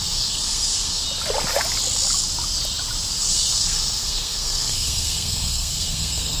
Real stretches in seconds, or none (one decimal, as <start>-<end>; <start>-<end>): 1.0-3.1